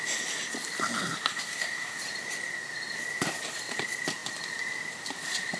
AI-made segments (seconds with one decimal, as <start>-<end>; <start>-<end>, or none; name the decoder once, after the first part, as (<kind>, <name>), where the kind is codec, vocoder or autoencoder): 1.3-2.0 (codec, DAC)